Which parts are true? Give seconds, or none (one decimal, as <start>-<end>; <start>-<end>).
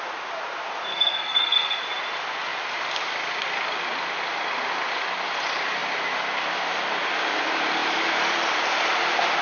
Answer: 0.0-0.9; 1.8-9.4